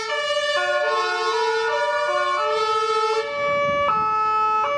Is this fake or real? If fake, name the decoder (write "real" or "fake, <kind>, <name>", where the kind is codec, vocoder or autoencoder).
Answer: real